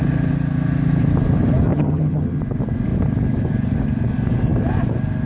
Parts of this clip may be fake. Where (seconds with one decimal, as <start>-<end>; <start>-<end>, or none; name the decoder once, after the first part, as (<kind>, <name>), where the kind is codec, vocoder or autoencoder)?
1.7-2.4 (vocoder, HiFi-GAN)